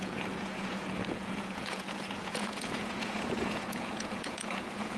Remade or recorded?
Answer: remade